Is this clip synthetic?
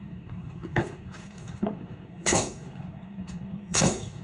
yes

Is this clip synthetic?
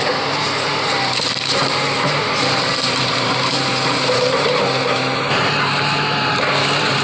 yes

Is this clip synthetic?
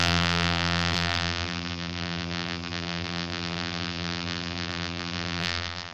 yes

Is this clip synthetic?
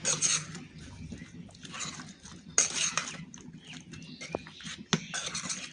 no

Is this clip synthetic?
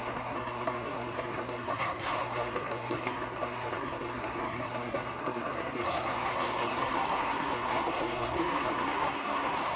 yes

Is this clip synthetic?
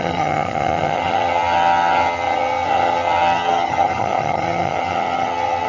yes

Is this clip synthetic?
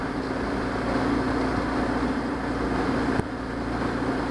no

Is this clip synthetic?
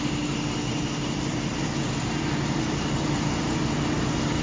no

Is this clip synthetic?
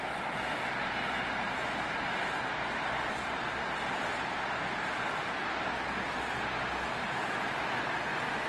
no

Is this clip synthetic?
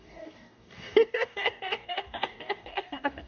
yes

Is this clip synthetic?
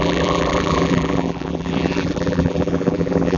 yes